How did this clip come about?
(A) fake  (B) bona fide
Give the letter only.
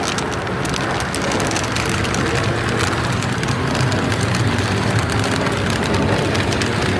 B